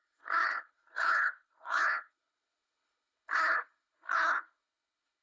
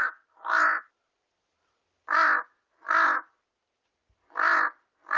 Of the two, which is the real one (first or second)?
second